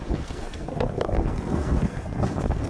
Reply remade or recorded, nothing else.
remade